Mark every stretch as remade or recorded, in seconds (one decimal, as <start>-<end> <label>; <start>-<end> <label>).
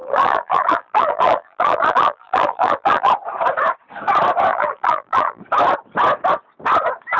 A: 0.0-3.1 remade; 3.1-4.5 recorded; 4.5-5.4 remade; 5.4-7.2 recorded